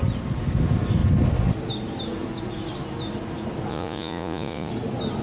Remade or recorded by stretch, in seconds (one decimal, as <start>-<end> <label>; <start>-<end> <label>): 0.0-3.7 recorded; 3.7-4.7 remade; 4.7-5.2 recorded